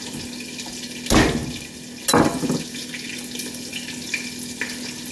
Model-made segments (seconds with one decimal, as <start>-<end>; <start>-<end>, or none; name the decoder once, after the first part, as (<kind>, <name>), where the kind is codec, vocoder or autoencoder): none